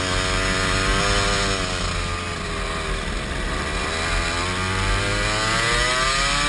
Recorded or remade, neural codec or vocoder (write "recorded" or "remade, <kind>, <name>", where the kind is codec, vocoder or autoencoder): recorded